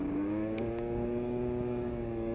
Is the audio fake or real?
fake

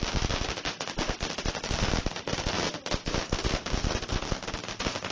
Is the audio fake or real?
real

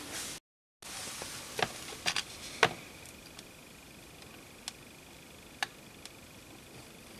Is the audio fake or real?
real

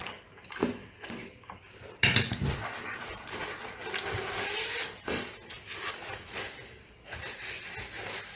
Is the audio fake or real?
real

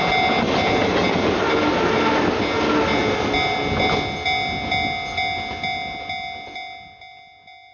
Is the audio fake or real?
real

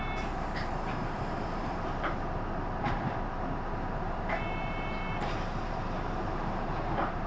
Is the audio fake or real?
fake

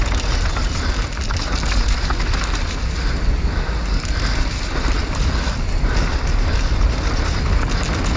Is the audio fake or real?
real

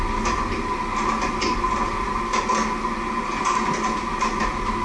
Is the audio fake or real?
real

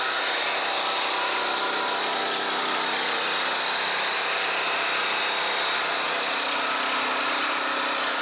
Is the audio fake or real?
real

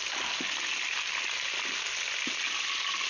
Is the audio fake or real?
real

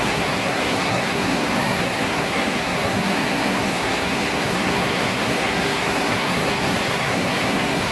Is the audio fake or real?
fake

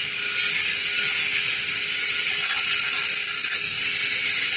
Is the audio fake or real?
real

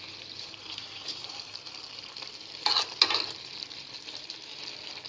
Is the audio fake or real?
real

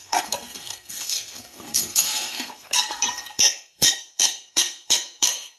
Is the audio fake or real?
fake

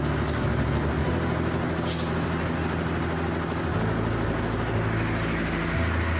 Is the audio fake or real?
real